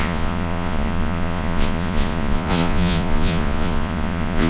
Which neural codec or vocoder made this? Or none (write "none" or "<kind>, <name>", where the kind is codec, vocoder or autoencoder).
vocoder, Vocos